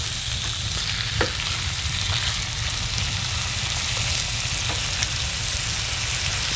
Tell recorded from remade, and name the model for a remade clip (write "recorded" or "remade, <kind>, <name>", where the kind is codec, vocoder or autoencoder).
recorded